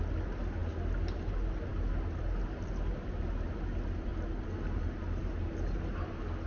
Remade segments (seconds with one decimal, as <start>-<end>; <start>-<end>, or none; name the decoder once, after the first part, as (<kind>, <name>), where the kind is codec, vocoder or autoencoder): none